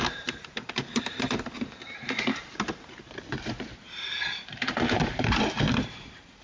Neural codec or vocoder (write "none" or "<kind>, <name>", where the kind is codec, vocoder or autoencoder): vocoder, BigVGAN v2